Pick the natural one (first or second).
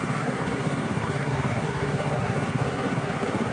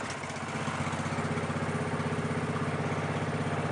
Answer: second